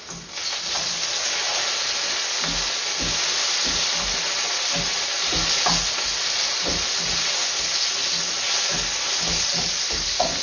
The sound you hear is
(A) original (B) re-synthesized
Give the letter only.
A